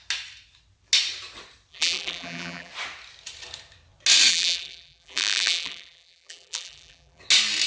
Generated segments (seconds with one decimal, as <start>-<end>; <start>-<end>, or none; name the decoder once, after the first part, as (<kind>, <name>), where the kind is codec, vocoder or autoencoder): 1.7-2.7 (vocoder, BigVGAN v2); 4.3-7.2